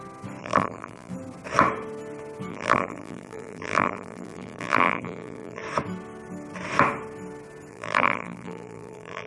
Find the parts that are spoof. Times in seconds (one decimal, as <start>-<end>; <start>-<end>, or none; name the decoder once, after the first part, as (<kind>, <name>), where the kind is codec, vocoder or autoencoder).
0.4-1.1 (vocoder, BigVGAN v2); 2.5-5.6; 7.7-9.3

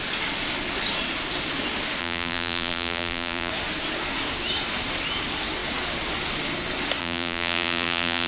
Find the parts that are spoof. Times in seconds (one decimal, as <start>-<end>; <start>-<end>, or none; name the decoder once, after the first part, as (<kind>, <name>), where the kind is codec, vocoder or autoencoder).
2.0-3.5 (vocoder, BigVGAN v2); 7.0-8.3